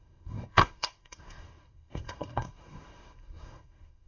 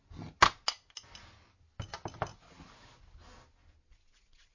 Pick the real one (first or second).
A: second